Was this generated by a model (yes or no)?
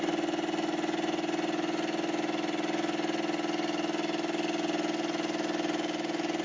no